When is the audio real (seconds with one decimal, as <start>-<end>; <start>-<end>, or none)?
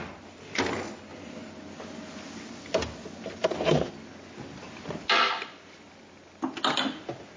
0.0-7.4